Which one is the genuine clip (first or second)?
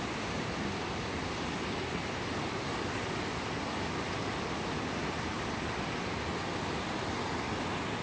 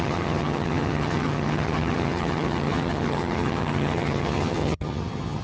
first